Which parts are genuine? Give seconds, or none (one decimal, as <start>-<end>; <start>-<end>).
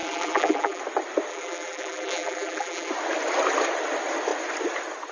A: 0.8-1.3; 2.9-5.1